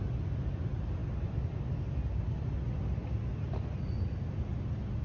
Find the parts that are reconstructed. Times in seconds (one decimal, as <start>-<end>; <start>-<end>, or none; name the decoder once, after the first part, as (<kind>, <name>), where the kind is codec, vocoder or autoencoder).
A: none